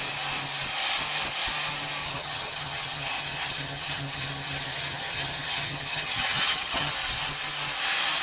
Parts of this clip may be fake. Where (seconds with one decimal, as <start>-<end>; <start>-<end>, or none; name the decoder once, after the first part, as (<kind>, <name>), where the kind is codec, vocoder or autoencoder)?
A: 2.0-6.9 (vocoder, HiFi-GAN)